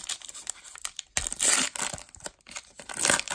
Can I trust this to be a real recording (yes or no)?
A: yes